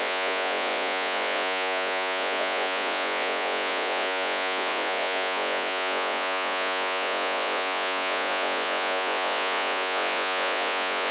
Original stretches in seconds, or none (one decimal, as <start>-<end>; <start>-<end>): none